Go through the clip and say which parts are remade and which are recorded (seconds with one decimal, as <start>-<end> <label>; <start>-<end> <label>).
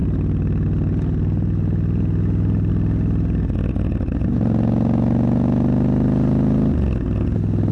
0.0-7.7 recorded